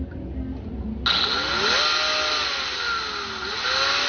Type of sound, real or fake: real